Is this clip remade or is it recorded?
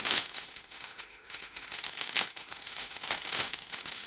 remade